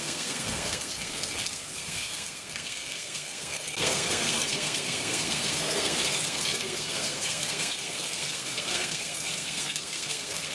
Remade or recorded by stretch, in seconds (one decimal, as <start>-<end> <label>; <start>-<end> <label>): 0.0-10.5 remade